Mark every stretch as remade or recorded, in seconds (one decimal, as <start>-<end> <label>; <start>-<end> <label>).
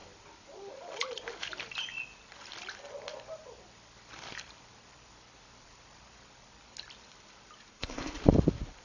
0.0-7.7 recorded; 7.7-8.2 remade; 8.2-8.8 recorded